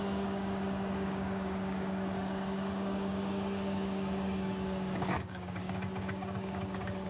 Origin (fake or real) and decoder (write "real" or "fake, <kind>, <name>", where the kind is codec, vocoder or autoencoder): fake, codec, DAC